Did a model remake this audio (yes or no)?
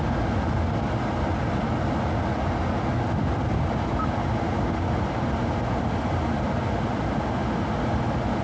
no